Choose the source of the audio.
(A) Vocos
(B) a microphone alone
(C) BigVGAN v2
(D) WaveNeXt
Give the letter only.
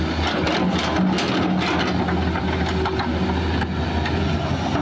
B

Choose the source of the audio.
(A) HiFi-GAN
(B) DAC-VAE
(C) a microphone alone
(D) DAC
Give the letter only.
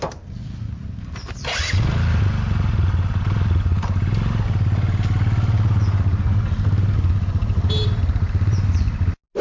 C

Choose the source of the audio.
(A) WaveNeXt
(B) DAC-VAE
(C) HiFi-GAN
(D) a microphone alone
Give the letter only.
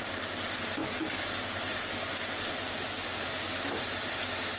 D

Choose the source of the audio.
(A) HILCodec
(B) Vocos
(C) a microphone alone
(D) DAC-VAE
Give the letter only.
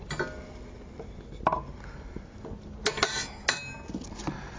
C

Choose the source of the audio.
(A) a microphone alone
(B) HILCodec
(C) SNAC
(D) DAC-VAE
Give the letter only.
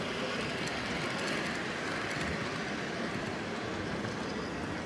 A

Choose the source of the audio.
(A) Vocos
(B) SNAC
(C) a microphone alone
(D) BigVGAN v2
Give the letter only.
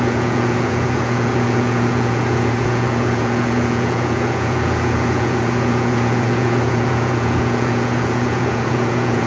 A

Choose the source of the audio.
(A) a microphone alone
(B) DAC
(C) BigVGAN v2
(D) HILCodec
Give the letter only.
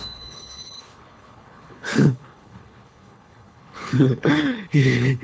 D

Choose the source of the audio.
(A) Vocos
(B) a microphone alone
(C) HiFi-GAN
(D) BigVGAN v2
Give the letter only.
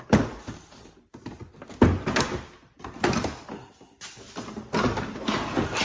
B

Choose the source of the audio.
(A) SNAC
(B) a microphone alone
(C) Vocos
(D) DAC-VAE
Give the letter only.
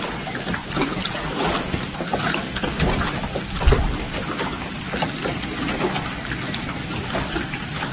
B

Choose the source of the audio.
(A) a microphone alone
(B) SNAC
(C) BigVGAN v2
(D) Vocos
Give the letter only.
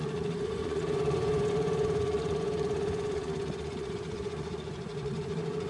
D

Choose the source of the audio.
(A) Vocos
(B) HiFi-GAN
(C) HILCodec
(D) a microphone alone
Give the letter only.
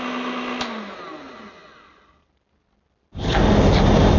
D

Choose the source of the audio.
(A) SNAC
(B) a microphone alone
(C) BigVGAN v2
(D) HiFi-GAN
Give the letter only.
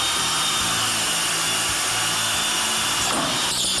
B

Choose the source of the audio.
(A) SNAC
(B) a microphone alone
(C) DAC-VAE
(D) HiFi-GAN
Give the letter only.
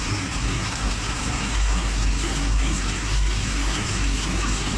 A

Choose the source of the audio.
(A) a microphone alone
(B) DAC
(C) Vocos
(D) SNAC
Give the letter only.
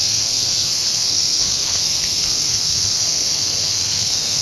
D